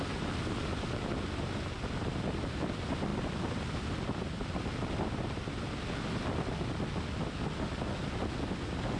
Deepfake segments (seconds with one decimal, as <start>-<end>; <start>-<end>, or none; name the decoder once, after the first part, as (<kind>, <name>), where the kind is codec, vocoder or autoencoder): none